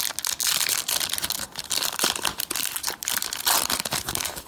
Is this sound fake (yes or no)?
no